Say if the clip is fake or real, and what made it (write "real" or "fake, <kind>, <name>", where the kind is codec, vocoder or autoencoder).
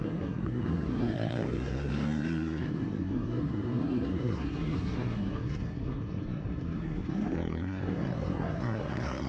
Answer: fake, codec, SNAC